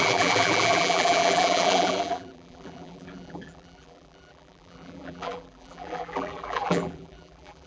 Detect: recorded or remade remade